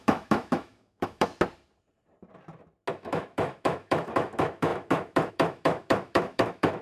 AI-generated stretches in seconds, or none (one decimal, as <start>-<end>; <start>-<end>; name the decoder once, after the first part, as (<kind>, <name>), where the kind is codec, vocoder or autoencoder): 0.0-1.3 (autoencoder, DAC-VAE); 2.9-6.8